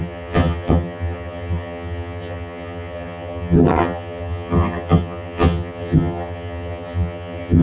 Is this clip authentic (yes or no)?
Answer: no